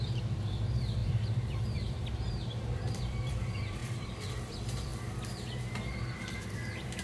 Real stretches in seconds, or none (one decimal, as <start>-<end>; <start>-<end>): 4.9-5.5

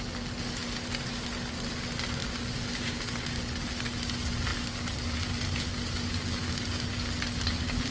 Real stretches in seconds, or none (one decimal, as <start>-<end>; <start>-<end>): 0.0-7.9

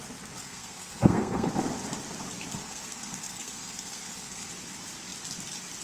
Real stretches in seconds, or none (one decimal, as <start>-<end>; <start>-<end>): 0.0-0.4; 1.5-2.6; 4.5-5.8

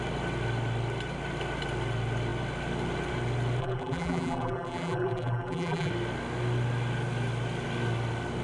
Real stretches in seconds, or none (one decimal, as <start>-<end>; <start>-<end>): 0.0-3.6; 5.9-8.4